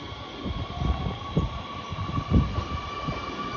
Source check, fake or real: real